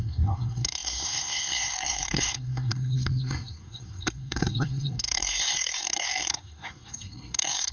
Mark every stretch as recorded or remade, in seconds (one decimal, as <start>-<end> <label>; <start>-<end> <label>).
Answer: 0.0-7.7 remade